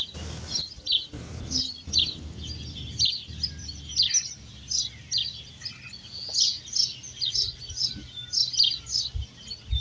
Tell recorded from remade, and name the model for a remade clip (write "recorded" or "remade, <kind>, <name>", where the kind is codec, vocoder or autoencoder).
recorded